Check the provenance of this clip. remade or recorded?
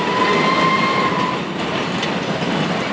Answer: recorded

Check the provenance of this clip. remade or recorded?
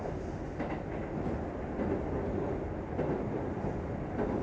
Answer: recorded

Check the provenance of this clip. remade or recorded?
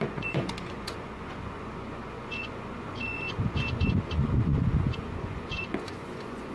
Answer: remade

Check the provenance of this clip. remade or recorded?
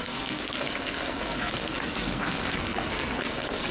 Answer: remade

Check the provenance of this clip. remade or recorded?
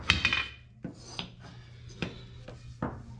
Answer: recorded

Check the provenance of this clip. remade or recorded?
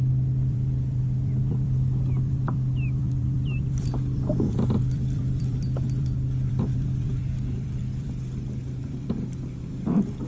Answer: remade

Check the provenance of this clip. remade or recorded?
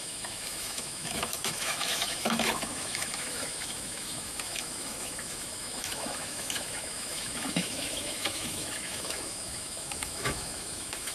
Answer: remade